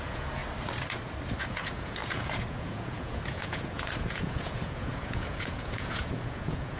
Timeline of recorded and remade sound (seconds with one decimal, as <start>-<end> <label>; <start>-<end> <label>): 0.0-0.4 remade; 0.4-1.4 recorded; 1.4-6.8 remade